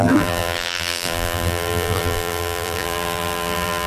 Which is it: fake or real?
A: fake